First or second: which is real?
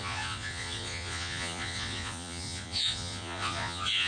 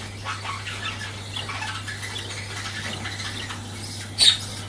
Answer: second